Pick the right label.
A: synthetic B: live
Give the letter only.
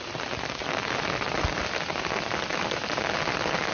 B